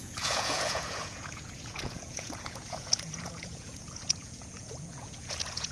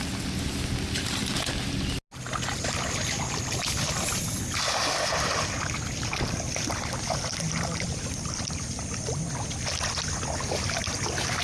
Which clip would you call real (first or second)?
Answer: second